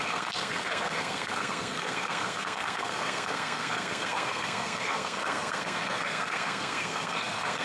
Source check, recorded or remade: remade